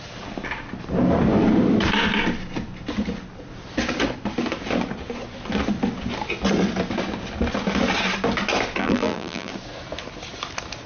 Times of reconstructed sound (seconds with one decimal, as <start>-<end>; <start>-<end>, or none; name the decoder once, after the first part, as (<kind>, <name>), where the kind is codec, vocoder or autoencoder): 8.8-9.5 (vocoder, BigVGAN v2)